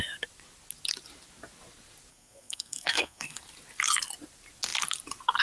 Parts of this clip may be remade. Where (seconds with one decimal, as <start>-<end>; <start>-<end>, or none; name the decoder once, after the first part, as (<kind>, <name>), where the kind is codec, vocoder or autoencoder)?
2.1-3.4 (codec, SNAC)

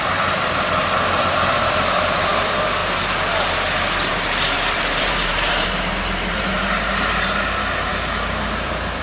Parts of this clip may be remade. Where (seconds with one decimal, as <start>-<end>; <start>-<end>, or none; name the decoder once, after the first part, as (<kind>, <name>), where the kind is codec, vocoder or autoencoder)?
0.0-2.8 (vocoder, BigVGAN v2); 4.1-9.0

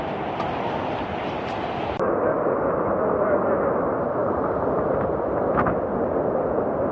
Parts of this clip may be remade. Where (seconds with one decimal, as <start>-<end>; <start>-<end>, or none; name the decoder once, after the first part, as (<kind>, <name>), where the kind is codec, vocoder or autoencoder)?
none

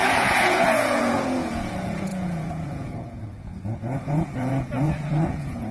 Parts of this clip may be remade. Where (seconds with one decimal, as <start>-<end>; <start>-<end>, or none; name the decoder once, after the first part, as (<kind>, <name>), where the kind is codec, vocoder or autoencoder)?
0.0-5.7 (vocoder, Vocos)